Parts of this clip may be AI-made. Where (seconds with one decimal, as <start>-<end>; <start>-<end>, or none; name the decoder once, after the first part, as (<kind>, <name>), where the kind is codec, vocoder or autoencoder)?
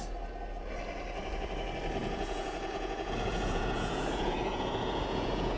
2.0-5.6 (vocoder, Vocos)